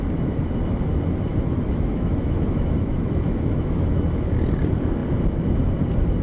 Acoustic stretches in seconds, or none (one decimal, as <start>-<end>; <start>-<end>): 0.0-1.3; 4.3-6.2